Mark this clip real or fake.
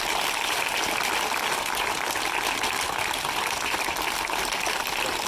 real